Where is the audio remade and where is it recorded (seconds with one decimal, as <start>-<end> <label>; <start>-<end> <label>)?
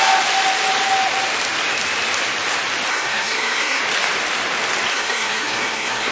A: 0.0-2.9 recorded; 2.9-3.8 remade; 3.8-4.9 recorded; 4.9-6.1 remade